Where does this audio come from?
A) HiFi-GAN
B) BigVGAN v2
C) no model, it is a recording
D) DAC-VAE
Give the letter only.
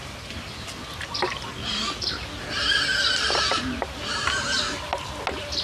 C